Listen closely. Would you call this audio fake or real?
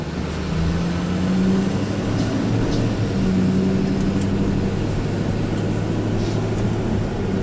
real